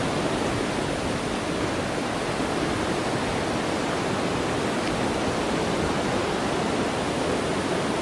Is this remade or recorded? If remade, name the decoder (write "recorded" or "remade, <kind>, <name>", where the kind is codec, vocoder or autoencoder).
recorded